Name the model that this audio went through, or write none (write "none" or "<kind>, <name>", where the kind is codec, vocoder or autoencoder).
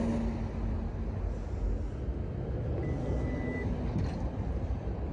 none